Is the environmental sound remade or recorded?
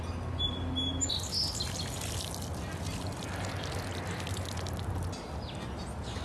recorded